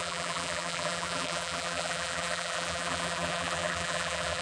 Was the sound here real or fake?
fake